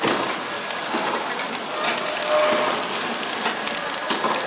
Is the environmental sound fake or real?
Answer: real